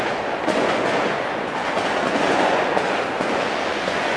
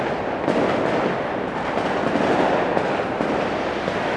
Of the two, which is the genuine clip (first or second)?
second